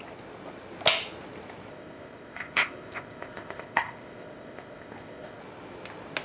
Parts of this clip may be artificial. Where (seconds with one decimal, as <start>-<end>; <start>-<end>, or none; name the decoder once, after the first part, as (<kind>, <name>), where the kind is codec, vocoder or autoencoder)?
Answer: 1.7-5.4 (codec, ZipCodec)